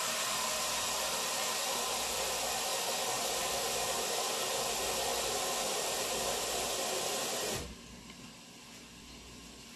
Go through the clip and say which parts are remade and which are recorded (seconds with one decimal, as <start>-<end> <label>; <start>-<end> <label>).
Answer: 0.0-2.7 remade; 2.7-3.3 recorded; 3.3-5.1 remade; 5.1-8.6 recorded; 8.6-9.8 remade